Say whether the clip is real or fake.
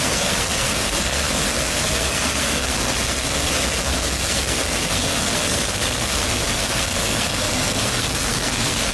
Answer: fake